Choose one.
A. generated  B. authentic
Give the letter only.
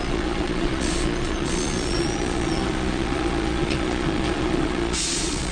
A